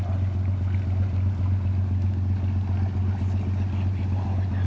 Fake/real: real